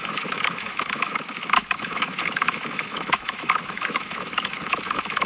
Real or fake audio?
fake